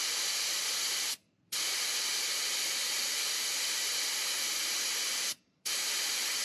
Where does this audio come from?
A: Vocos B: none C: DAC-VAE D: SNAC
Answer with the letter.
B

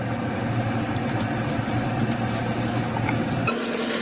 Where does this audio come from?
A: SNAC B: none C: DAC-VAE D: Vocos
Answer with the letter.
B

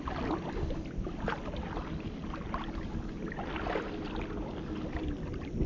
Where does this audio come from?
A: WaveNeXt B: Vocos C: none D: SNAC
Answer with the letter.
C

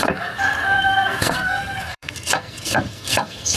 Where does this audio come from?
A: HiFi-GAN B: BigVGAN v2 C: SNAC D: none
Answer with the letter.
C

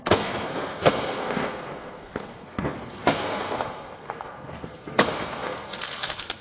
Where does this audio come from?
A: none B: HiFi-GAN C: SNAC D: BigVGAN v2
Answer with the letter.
C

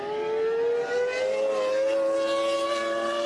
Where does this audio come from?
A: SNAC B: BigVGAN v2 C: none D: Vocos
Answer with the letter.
C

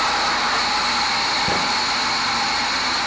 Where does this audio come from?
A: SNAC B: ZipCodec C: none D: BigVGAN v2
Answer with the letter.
C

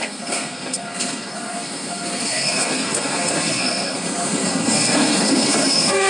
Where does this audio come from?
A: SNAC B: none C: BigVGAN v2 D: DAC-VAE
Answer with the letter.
A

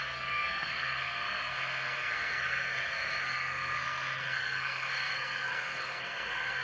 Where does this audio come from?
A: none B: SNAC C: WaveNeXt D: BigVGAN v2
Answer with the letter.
B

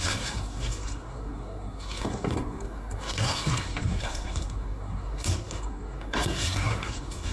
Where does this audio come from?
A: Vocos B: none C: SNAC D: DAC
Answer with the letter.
C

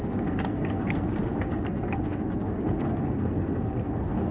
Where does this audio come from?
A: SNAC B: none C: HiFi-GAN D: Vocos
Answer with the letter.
A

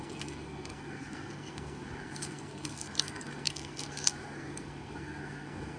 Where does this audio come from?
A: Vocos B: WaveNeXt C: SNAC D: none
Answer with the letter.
C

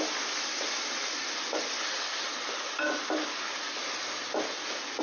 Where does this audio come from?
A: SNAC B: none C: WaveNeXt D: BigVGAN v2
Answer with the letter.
B